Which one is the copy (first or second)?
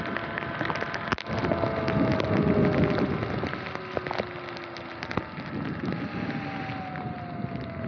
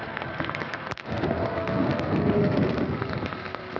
second